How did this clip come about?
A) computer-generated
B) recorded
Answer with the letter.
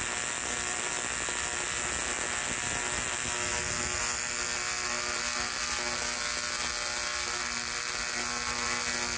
B